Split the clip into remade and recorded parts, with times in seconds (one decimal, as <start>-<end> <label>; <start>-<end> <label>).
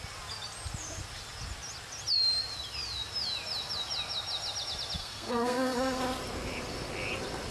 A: 0.0-5.0 recorded; 5.0-6.0 remade; 6.0-7.5 recorded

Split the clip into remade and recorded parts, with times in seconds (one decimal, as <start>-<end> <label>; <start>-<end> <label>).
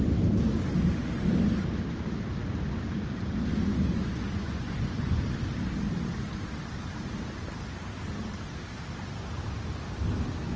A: 0.0-3.7 recorded; 3.7-5.2 remade; 5.2-10.6 recorded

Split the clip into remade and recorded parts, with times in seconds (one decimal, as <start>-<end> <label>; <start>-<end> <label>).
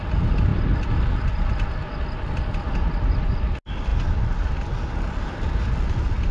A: 0.0-6.3 recorded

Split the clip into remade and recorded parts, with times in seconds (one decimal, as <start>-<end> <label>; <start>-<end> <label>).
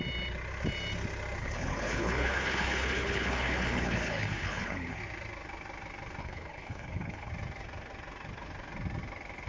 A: 0.0-1.4 recorded; 1.4-5.0 remade; 5.0-6.2 recorded; 6.2-7.3 remade; 7.3-9.5 recorded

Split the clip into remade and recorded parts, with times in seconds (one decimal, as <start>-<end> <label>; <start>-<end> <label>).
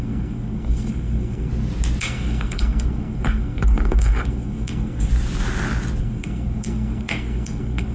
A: 0.0-1.5 remade; 1.5-2.0 recorded; 2.0-5.1 remade; 5.1-6.0 recorded; 6.0-7.9 remade